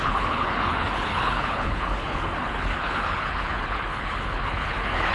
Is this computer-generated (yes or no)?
yes